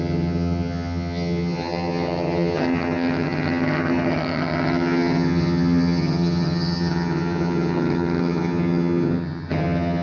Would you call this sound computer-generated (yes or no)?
yes